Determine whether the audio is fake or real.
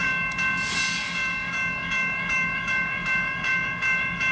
fake